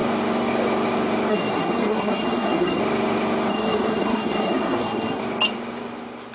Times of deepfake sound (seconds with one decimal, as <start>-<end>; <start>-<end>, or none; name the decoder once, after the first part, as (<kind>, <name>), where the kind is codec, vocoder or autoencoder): 1.3-2.8 (codec, SNAC); 3.5-5.2